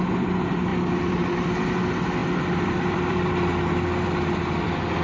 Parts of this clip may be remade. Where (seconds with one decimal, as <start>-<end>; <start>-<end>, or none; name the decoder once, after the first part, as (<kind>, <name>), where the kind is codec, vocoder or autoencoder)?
0.7-1.3 (vocoder, BigVGAN v2); 2.2-3.3